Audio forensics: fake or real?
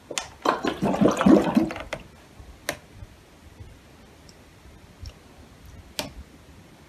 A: real